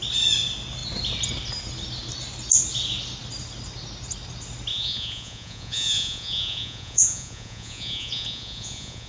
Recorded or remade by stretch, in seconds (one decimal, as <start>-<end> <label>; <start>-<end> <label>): 0.0-4.7 recorded; 4.7-9.1 remade